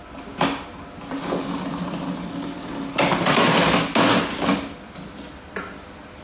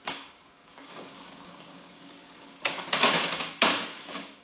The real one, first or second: first